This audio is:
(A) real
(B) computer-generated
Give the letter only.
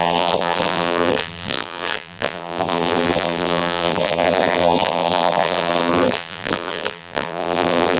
B